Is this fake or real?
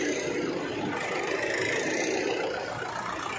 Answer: real